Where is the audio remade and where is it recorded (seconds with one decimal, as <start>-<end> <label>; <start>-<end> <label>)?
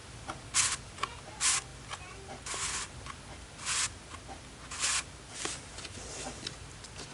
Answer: 0.0-7.1 recorded